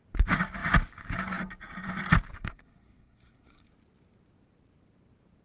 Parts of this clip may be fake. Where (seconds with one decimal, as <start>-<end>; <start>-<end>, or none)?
2.4-3.7